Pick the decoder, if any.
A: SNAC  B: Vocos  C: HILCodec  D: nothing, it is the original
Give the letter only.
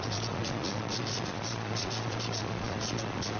B